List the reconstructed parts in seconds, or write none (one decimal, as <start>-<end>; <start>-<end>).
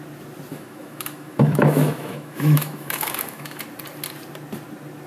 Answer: 0.5-3.6